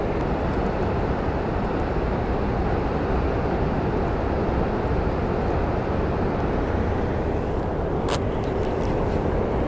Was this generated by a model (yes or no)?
no